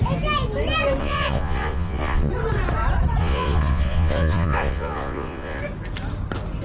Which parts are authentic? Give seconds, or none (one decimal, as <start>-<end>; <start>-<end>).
0.0-1.0; 2.3-3.2; 5.6-6.6